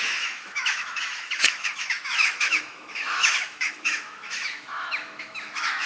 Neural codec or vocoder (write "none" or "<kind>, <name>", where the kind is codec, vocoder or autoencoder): autoencoder, DAC-VAE